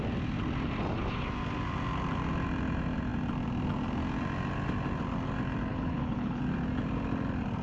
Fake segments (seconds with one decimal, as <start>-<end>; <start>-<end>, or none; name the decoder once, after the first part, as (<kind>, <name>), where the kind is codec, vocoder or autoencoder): 5.7-6.4 (codec, HILCodec)